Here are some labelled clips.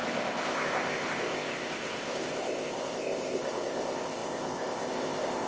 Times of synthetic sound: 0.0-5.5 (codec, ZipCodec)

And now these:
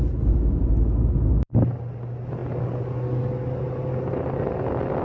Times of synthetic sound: none

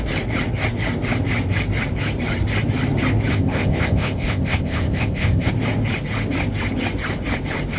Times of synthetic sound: 3.3-5.5 (codec, ZipCodec)

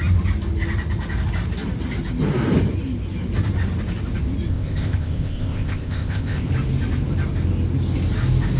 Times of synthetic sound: 4.5-6.5 (codec, ZipCodec)

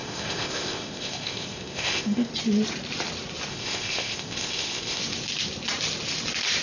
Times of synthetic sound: 0.0-2.3 (codec, ZipCodec); 3.5-5.0

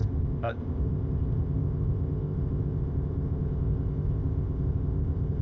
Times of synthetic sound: 0.0-5.4 (codec, ZipCodec)

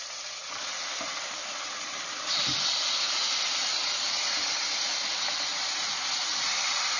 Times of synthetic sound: none